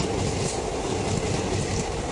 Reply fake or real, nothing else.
real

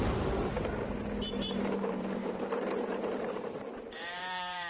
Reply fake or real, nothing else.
fake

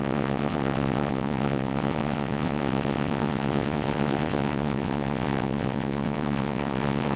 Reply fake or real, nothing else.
fake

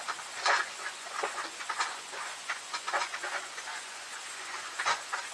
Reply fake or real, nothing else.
fake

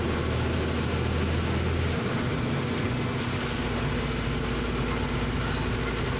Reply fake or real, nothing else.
real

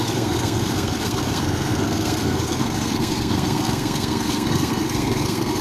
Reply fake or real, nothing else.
fake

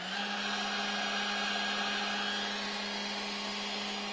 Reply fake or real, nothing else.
real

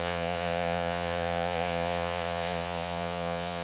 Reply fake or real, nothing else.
fake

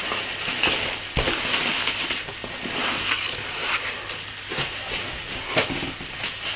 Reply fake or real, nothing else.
real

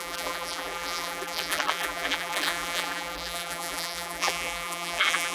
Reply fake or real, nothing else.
fake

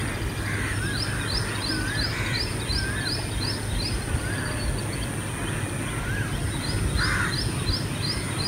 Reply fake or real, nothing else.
real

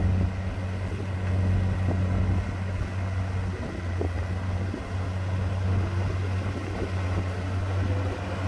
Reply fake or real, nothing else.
real